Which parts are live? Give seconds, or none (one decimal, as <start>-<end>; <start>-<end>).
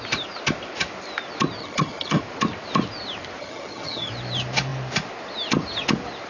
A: 0.0-1.6; 2.2-3.4; 4.1-6.3